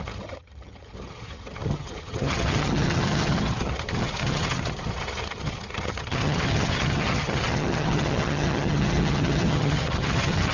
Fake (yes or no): yes